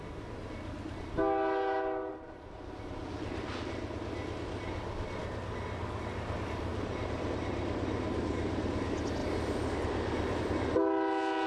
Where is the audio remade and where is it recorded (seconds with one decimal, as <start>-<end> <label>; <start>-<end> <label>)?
0.0-2.1 recorded; 2.1-4.0 remade; 4.0-6.7 recorded; 6.7-7.5 remade; 7.5-9.2 recorded; 9.2-10.4 remade; 10.4-11.5 recorded